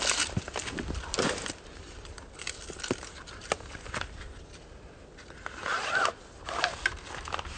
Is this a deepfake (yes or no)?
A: no